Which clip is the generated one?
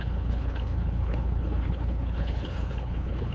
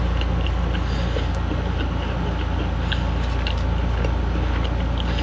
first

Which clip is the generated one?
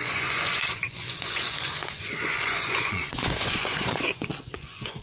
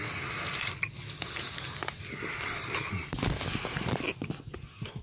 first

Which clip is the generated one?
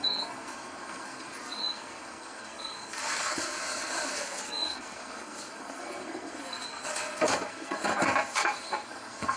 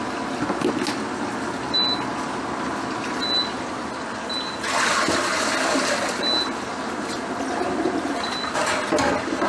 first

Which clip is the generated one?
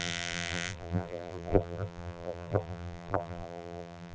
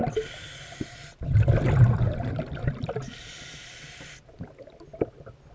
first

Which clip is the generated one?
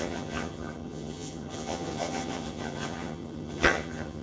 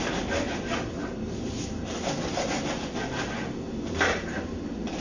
first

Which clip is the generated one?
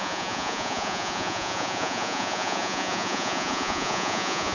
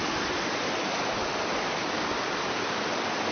first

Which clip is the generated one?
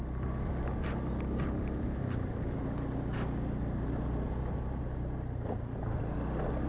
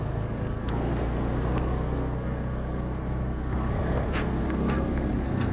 second